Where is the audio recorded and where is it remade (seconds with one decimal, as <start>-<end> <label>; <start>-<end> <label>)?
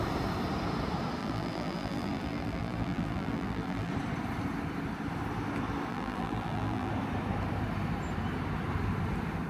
0.0-1.2 recorded; 1.2-3.9 remade; 3.9-5.9 recorded; 5.9-6.9 remade; 6.9-9.5 recorded